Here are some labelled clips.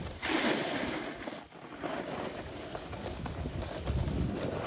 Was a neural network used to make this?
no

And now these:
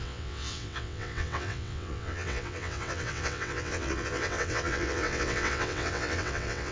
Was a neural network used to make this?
yes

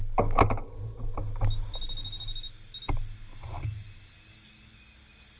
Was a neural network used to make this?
no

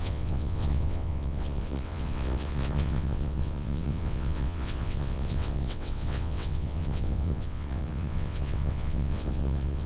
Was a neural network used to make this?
yes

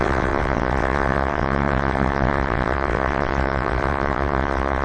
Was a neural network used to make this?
yes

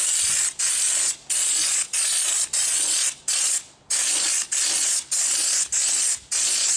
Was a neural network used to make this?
no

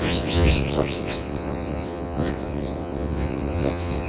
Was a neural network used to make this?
yes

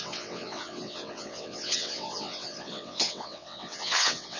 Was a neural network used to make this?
yes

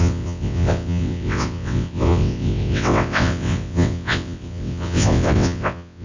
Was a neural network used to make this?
yes